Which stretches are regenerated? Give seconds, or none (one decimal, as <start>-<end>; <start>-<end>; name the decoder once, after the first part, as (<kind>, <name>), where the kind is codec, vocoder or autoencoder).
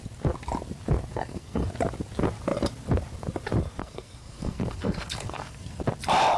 1.1-1.7 (codec, SNAC); 3.8-5.8